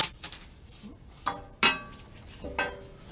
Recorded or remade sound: recorded